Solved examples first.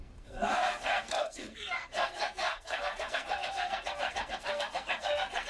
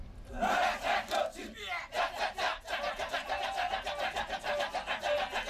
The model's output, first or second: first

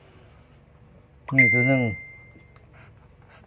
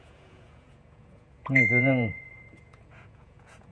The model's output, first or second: second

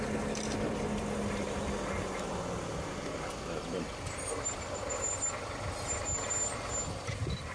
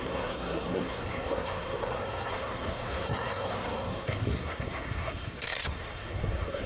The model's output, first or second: second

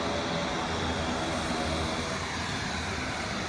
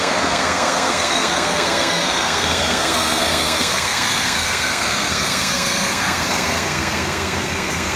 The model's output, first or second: second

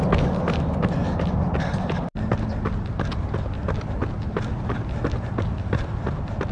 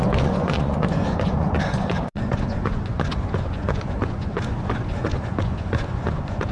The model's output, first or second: second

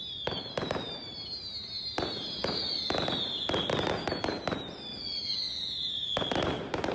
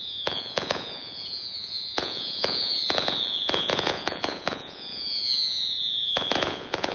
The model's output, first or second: second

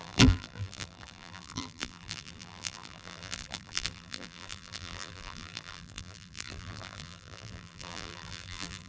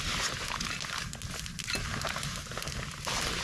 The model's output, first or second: first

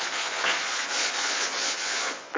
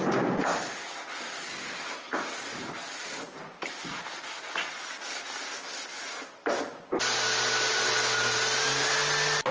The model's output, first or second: first